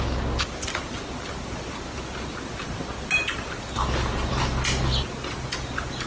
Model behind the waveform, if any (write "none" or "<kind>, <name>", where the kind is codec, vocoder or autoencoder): none